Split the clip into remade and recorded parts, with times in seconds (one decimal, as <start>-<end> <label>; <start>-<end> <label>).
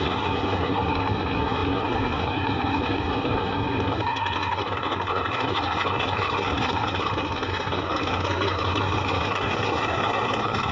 0.0-10.7 remade